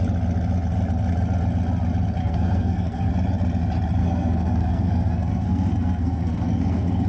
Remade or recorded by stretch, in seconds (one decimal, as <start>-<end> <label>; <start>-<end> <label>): 0.0-2.2 recorded; 2.2-3.1 remade; 3.1-4.0 recorded; 4.0-7.1 remade